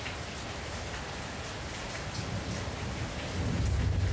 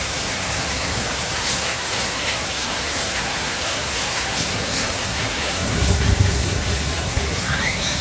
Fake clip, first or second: second